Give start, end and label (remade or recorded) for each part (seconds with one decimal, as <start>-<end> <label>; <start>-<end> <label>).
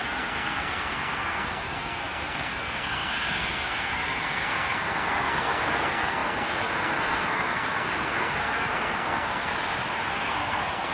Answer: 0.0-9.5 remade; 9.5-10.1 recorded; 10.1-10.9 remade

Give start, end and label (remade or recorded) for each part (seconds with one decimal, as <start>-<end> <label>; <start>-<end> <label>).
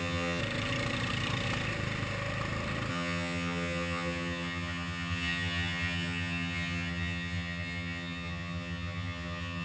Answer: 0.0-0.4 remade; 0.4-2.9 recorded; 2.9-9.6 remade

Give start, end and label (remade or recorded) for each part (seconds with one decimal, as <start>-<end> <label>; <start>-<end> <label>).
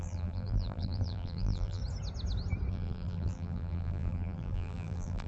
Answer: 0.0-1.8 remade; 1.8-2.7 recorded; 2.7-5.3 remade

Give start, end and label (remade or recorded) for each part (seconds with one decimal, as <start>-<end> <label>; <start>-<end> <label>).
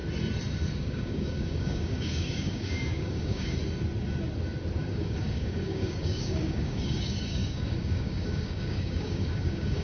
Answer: 0.0-0.8 recorded; 0.8-3.6 remade; 3.6-4.8 recorded; 4.8-9.8 remade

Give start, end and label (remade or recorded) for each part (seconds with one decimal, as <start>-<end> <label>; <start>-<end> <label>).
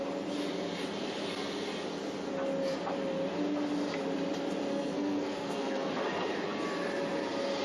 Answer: 0.0-4.7 recorded; 4.7-5.9 remade; 5.9-7.6 recorded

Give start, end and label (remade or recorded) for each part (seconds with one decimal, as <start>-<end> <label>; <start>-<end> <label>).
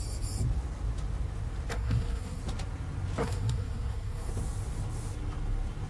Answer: 0.0-1.7 recorded; 1.7-2.4 remade; 2.4-3.2 recorded; 3.2-4.3 remade; 4.3-5.9 recorded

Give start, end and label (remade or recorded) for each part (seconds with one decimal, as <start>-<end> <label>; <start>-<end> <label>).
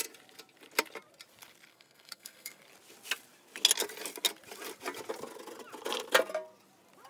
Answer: 0.0-1.7 recorded; 1.7-2.6 remade; 2.6-7.1 recorded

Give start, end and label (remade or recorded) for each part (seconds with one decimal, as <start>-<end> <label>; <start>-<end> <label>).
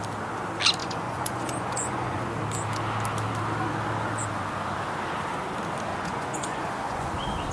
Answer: 0.0-0.8 recorded; 0.8-2.3 remade; 2.3-5.9 recorded; 5.9-7.1 remade; 7.1-7.5 recorded